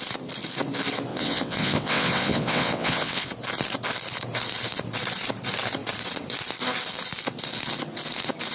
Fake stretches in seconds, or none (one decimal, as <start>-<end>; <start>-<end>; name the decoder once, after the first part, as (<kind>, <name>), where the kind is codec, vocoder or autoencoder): 1.1-3.3 (vocoder, WaveNeXt)